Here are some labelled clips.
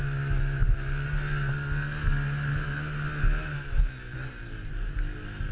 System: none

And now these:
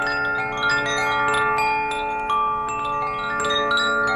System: none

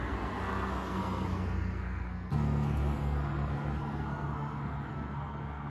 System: codec, SNAC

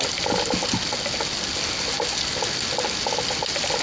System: none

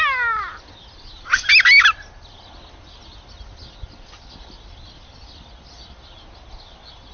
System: none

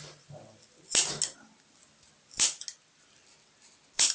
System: none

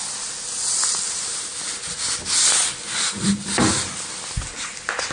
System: none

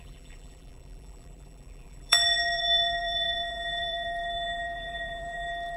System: vocoder, BigVGAN v2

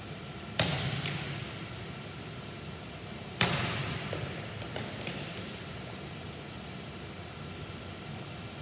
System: none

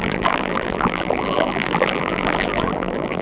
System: vocoder, BigVGAN v2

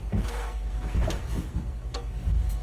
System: codec, SNAC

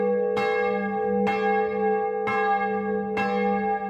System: none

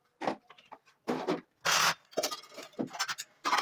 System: none